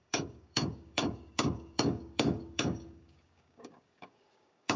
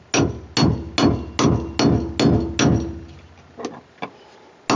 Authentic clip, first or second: second